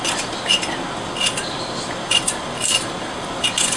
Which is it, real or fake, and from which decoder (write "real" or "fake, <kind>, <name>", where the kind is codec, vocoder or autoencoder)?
real